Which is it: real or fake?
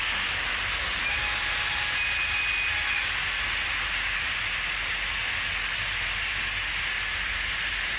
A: real